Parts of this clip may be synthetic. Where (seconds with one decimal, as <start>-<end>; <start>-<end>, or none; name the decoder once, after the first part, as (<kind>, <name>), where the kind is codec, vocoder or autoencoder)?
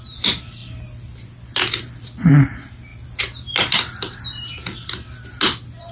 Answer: 0.6-2.3 (vocoder, BigVGAN v2); 2.9-5.4